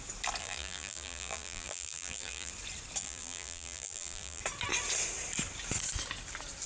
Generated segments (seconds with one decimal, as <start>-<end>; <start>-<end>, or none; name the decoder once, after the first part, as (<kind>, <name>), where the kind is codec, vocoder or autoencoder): 0.4-2.5 (vocoder, BigVGAN v2); 3.0-4.4